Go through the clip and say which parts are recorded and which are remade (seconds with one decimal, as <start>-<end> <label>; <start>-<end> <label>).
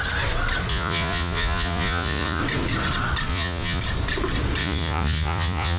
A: 0.0-0.7 recorded; 0.7-2.4 remade; 2.4-3.3 recorded; 3.3-3.8 remade; 3.8-4.6 recorded; 4.6-5.8 remade